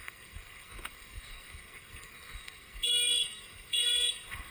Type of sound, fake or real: fake